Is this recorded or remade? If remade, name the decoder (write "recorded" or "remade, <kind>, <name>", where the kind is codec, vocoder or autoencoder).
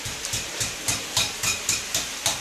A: recorded